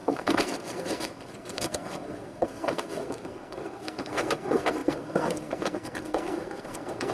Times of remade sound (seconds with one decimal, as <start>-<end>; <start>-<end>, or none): 0.0-7.1

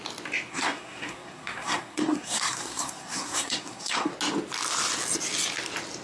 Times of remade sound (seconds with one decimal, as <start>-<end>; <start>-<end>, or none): 0.5-4.1

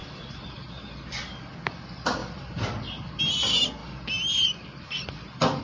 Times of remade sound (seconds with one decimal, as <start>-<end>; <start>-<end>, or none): 0.0-1.5; 2.2-3.2; 3.8-5.6